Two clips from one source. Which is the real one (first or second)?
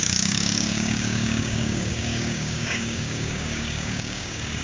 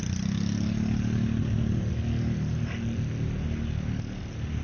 second